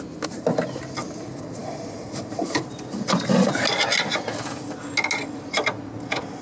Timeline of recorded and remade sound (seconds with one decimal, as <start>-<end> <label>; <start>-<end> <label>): 0.0-1.6 recorded; 1.6-3.5 remade; 3.5-6.4 recorded

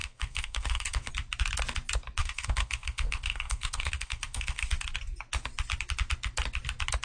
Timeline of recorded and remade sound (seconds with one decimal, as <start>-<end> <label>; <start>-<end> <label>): 0.0-1.1 remade; 1.1-2.2 recorded; 2.2-4.7 remade; 4.7-7.0 recorded

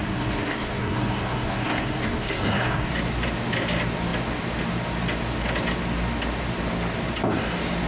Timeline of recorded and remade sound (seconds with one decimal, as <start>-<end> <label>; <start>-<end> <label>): 0.0-2.9 remade; 2.9-7.9 recorded

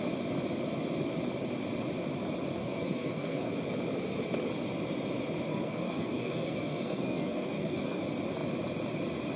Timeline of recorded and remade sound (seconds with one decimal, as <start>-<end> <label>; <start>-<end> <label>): 0.0-2.6 recorded; 2.6-3.5 remade; 3.5-5.5 recorded; 5.5-8.0 remade; 8.0-9.4 recorded

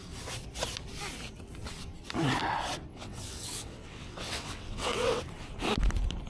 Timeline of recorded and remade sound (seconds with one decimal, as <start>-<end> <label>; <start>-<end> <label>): 0.0-2.9 recorded; 2.9-5.2 remade; 5.2-6.3 recorded

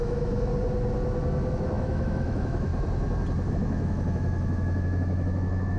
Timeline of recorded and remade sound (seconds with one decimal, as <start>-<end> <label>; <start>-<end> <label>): 0.0-0.5 remade; 0.5-1.5 recorded; 1.5-2.7 remade; 2.7-3.5 recorded; 3.5-5.8 remade